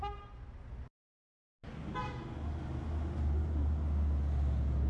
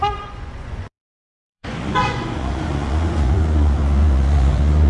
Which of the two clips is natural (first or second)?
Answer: first